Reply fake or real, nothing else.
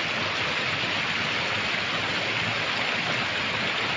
real